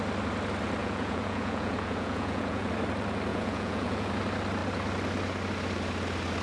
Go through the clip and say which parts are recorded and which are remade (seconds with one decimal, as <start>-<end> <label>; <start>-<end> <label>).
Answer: 0.0-0.8 recorded; 0.8-2.7 remade; 2.7-3.3 recorded; 3.3-4.1 remade; 4.1-6.4 recorded